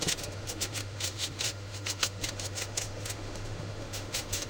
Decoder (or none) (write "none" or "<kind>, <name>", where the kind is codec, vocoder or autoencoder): autoencoder, DAC-VAE